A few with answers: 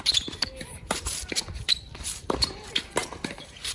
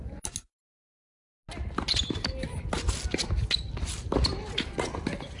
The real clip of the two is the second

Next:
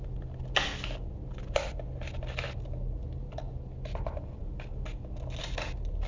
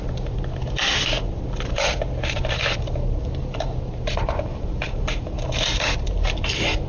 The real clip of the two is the first